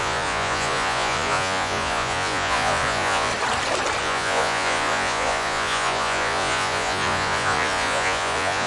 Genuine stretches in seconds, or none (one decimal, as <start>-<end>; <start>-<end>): 3.3-4.0